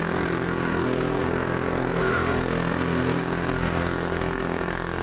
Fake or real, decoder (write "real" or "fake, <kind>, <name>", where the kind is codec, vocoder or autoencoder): fake, codec, SNAC